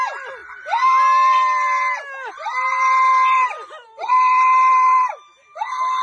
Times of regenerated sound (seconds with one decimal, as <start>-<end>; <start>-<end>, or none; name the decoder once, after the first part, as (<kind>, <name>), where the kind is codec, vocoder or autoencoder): none